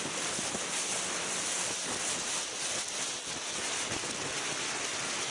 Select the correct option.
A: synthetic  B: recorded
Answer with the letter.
B